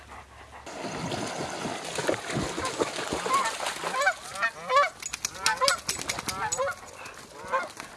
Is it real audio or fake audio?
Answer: real